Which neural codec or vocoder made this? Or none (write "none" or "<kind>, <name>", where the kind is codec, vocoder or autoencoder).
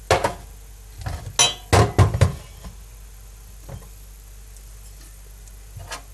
none